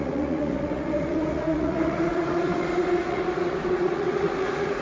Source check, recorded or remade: remade